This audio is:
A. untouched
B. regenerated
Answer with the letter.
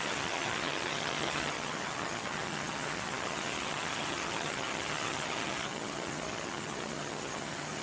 B